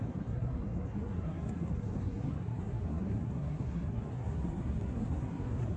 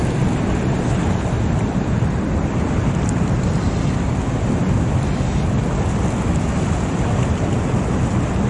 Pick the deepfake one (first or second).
first